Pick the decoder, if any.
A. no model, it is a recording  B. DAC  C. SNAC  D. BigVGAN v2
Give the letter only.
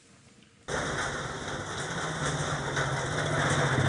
A